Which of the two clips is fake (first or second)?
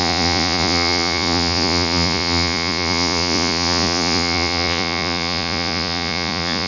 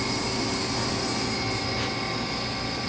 first